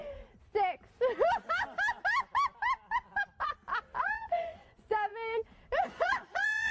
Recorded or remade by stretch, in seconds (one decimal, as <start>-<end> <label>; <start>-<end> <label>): 0.0-4.0 recorded; 4.0-5.1 remade; 5.1-5.8 recorded; 5.8-6.7 remade